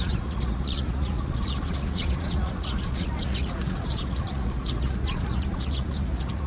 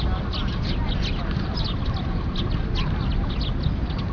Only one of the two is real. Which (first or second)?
second